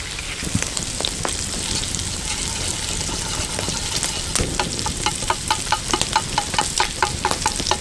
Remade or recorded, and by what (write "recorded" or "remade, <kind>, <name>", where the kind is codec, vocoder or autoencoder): recorded